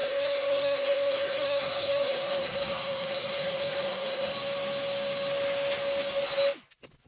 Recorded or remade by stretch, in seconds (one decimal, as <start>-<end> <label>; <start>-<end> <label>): 0.0-4.3 remade; 4.3-7.1 recorded